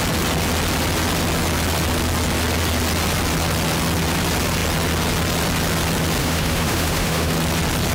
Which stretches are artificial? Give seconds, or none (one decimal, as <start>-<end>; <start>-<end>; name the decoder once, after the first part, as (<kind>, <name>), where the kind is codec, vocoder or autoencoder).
6.2-7.3 (autoencoder, DAC-VAE)

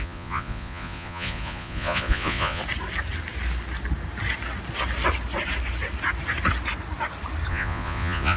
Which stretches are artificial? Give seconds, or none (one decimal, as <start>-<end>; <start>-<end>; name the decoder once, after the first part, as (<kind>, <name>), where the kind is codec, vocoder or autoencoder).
0.0-2.6 (vocoder, Vocos); 7.5-8.4

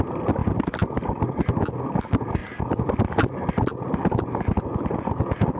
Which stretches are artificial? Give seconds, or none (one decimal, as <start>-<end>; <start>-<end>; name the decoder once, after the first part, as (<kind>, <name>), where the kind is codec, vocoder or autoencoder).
none

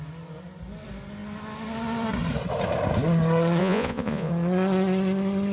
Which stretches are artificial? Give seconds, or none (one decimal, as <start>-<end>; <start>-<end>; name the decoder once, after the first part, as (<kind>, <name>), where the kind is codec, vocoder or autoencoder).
3.6-4.3 (vocoder, Vocos)

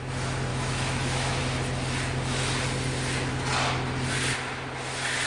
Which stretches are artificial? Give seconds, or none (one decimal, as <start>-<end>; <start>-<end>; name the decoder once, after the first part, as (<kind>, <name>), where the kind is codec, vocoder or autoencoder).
0.5-1.4 (autoencoder, DAC-VAE)